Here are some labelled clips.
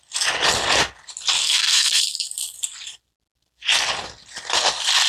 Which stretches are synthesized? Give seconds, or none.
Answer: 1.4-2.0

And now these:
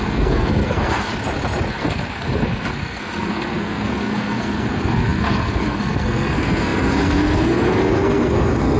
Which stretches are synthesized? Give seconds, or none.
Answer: 0.0-1.1; 1.7-8.8

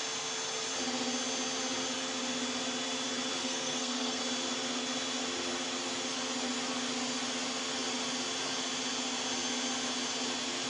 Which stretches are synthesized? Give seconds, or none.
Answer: 3.4-4.2

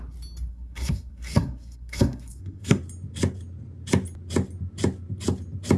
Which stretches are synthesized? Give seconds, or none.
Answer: 0.5-2.8

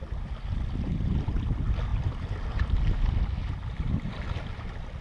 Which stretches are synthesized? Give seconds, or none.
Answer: none

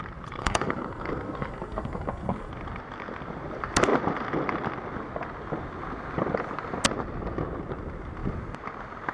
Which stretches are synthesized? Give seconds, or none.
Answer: 0.4-2.5

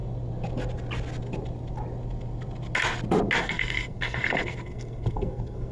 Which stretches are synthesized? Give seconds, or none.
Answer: 3.4-5.7